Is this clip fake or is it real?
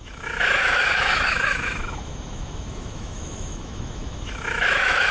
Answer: fake